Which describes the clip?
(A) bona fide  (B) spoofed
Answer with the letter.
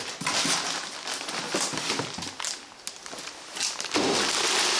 A